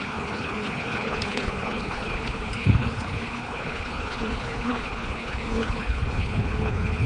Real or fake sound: fake